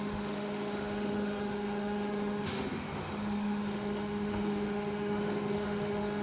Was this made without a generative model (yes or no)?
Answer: no